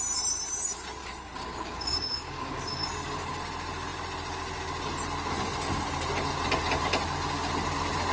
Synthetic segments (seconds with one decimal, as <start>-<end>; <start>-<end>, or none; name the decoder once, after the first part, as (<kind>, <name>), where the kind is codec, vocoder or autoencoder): 1.0-3.4 (codec, DAC)